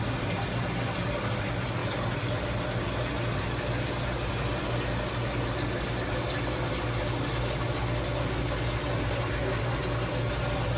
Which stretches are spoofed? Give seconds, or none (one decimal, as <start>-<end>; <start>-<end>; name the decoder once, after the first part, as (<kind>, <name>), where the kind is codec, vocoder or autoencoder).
none